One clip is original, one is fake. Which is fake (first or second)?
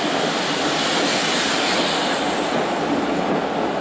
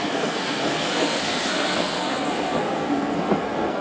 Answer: second